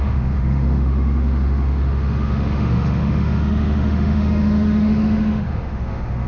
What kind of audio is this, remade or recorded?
remade